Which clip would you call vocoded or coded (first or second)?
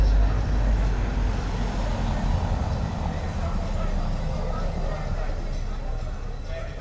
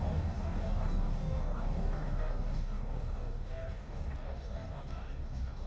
second